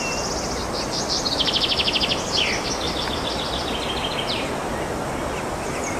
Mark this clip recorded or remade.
recorded